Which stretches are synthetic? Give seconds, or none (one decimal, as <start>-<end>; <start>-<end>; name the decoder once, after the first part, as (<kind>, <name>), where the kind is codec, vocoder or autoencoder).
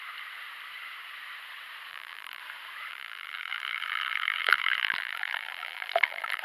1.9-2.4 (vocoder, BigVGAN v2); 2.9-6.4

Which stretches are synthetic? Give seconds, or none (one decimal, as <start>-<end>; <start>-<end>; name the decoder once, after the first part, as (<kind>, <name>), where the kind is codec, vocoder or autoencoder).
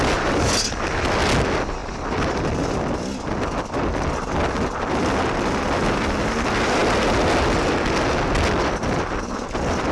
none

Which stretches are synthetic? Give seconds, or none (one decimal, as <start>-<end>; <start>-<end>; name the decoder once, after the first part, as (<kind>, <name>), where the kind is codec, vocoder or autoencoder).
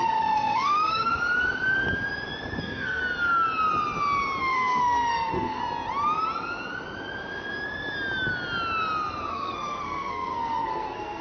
0.0-1.1 (codec, SNAC); 2.6-3.0; 4.4-5.6; 9.3-11.2